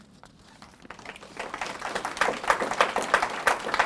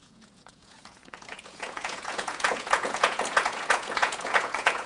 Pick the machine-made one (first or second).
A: second